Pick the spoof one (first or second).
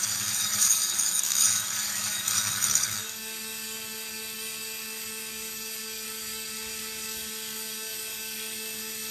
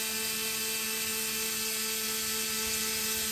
first